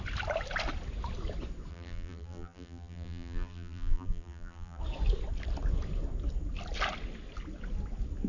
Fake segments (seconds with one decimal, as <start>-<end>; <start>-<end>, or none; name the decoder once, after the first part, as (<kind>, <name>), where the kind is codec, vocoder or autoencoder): 1.7-4.8 (vocoder, BigVGAN v2)